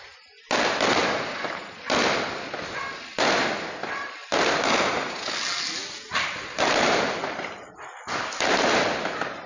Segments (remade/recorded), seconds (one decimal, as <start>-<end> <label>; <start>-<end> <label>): 0.0-9.5 recorded